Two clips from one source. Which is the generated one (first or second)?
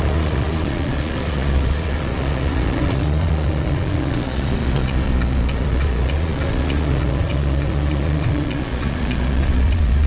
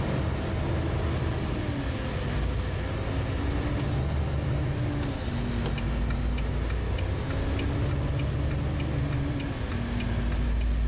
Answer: first